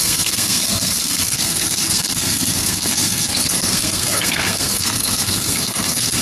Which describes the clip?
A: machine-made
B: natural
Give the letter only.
A